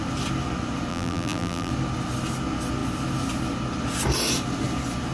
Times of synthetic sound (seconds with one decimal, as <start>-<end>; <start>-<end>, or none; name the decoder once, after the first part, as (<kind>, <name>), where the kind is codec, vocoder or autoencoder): 0.9-1.7 (vocoder, BigVGAN v2)